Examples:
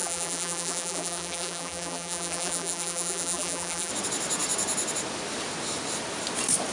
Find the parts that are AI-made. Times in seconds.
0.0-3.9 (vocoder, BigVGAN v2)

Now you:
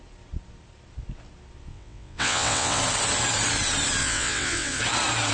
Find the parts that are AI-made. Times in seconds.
1.7-2.8 (vocoder, WaveNeXt); 4.0-4.8